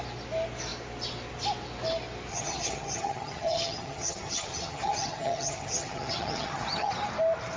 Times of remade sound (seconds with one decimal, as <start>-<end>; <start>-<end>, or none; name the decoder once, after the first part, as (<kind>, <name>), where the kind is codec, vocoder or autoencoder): 2.3-6.9 (vocoder, HiFi-GAN)